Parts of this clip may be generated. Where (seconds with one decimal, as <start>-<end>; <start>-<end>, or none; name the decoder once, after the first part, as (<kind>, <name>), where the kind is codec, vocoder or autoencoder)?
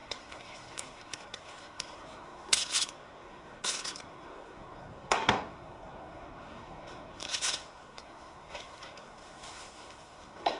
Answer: 0.0-10.6 (codec, SNAC)